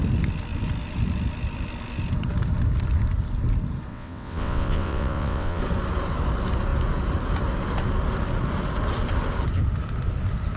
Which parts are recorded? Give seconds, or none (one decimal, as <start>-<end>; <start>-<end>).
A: 0.0-3.9; 5.6-10.6